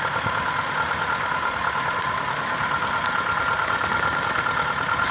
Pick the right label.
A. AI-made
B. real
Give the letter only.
B